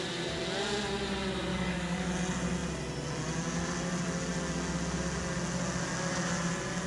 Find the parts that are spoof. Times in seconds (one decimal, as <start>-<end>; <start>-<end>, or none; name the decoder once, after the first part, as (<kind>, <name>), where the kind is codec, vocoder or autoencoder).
1.5-2.1 (codec, DAC)